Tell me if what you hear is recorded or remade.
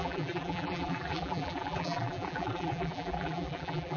remade